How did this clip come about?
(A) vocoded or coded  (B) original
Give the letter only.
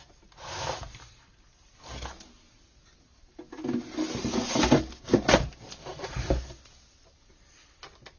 B